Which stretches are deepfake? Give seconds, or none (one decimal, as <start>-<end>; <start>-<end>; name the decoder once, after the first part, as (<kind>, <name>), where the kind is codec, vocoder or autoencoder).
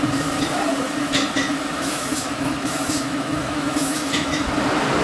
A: 1.5-4.5 (autoencoder, DAC-VAE)